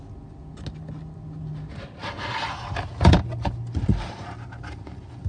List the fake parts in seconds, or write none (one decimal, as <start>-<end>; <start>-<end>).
2.0-5.3